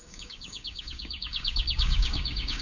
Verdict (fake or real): fake